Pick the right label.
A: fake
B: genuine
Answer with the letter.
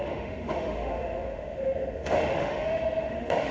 A